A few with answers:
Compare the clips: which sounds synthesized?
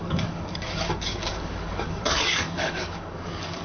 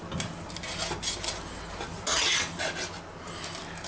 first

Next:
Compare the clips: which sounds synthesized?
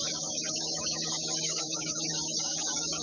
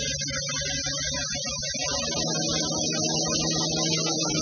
first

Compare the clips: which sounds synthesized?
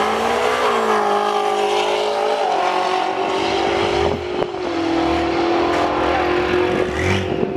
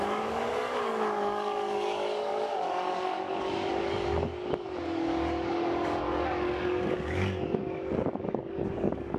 second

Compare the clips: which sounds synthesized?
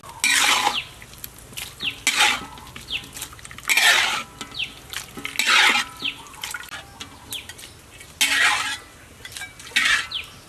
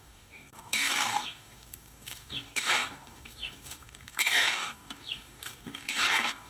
second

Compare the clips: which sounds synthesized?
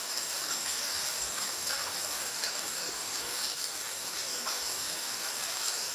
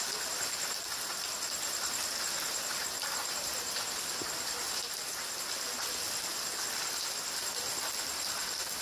first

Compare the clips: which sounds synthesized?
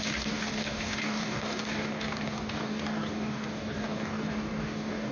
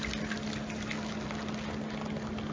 first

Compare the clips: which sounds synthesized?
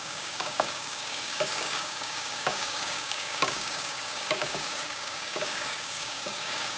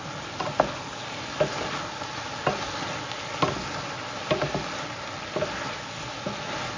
first